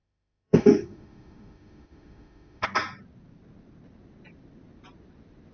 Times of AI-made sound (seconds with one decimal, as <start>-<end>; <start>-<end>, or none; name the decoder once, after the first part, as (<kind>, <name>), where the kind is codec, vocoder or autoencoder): 0.0-2.6 (autoencoder, DAC-VAE)